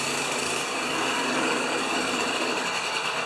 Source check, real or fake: fake